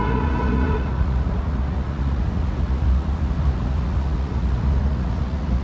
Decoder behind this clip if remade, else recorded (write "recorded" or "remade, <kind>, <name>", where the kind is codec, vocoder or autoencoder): remade, vocoder, Vocos